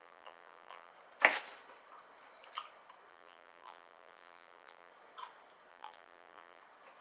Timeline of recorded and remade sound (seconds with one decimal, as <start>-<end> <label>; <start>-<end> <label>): 0.0-0.9 remade; 0.9-3.1 recorded; 3.1-4.9 remade; 4.9-5.7 recorded; 5.7-6.6 remade; 6.6-7.0 recorded